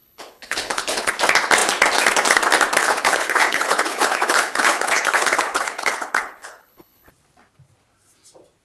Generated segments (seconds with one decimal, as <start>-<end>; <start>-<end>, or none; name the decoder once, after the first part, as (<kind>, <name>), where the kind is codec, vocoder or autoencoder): 0.0-1.1 (codec, HILCodec); 2.8-7.1